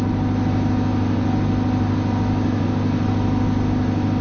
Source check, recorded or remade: recorded